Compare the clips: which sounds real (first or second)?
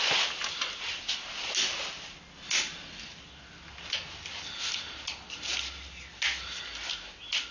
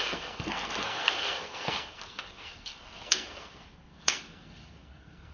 first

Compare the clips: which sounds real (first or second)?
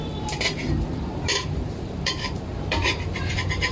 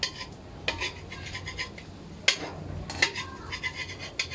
second